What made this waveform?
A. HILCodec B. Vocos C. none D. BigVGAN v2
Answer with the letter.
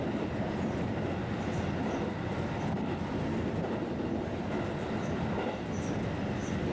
C